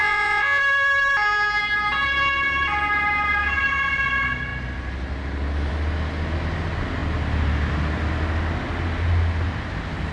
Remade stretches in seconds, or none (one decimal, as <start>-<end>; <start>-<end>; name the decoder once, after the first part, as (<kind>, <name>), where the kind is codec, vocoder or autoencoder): 0.0-0.6 (vocoder, Vocos)